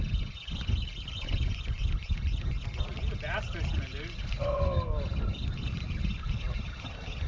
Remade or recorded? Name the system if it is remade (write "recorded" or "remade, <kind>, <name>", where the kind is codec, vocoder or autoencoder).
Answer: recorded